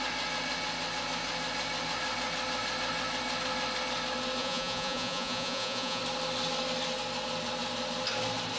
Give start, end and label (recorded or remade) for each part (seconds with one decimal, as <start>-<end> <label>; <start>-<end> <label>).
0.0-4.4 recorded; 4.4-6.0 remade; 6.0-8.6 recorded